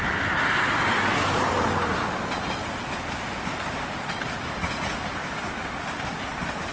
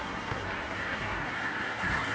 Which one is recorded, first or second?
first